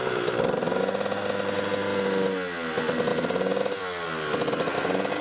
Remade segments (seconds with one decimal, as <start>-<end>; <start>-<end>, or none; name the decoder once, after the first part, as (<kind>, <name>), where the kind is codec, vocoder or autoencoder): none

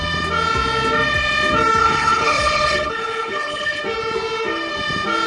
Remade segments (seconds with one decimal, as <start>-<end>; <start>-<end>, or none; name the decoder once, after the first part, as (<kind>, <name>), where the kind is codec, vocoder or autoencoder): 1.8-3.8 (codec, HILCodec)

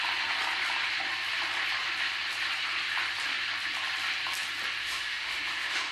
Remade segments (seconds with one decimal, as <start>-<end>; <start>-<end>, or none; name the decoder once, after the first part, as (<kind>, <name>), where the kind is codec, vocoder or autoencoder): 4.8-5.9 (autoencoder, DAC-VAE)

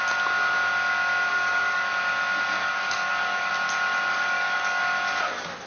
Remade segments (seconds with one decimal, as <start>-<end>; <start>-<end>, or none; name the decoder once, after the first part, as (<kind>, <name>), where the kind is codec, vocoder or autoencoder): 1.3-1.9 (codec, DAC); 2.6-3.5; 4.1-4.8